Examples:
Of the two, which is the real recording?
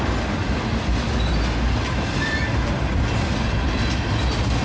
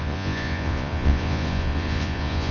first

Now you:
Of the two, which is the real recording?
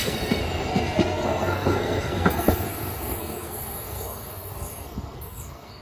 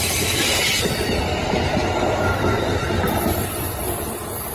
second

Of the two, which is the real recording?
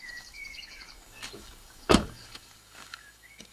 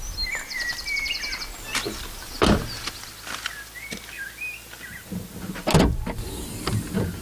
second